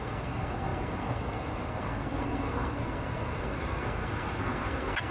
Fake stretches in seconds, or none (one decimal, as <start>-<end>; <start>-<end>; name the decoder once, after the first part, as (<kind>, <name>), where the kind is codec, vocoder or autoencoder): 0.0-5.1 (codec, SNAC)

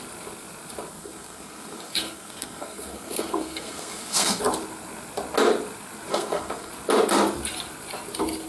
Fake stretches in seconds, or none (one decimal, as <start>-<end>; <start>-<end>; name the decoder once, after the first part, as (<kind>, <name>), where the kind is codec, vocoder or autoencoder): 1.0-4.4 (codec, SNAC); 6.1-6.7

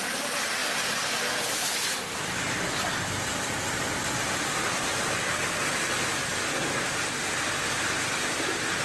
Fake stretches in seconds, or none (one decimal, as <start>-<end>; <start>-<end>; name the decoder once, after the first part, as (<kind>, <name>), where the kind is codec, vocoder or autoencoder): none

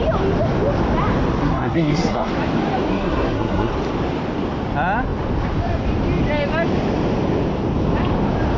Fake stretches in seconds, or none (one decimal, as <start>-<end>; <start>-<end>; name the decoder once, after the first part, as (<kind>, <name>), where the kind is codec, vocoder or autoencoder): 1.4-2.3 (codec, SNAC); 2.9-3.7